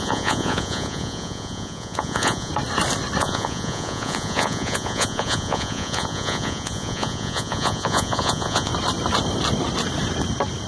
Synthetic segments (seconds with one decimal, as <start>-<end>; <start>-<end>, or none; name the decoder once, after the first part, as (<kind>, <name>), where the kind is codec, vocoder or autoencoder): 0.0-2.5 (vocoder, Vocos); 3.2-8.7